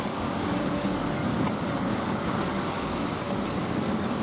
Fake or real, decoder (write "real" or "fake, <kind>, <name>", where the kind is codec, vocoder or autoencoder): fake, codec, DAC